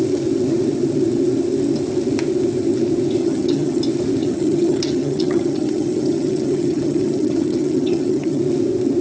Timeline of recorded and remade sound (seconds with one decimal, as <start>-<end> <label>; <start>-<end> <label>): 0.0-3.2 recorded; 3.2-3.8 remade; 3.8-4.2 recorded; 4.2-8.4 remade; 8.4-9.0 recorded